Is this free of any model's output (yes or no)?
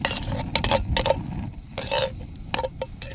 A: yes